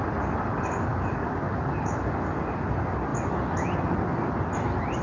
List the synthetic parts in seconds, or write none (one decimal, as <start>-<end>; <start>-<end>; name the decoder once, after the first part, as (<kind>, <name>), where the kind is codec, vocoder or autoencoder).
none